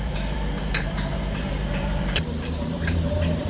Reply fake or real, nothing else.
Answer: fake